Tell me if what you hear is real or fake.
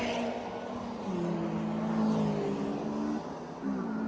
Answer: real